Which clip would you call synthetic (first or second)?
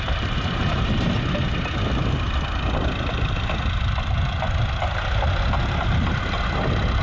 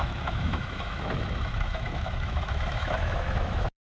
second